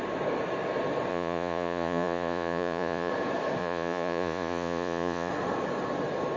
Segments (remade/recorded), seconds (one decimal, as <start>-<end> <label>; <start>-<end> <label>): 0.0-1.1 recorded; 1.1-3.1 remade; 3.1-3.6 recorded; 3.6-5.3 remade; 5.3-6.4 recorded